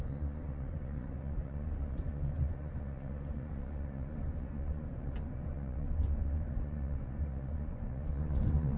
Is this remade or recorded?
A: remade